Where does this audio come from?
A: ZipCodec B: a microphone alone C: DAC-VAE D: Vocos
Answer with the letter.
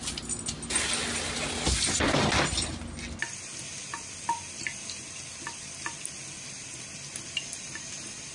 B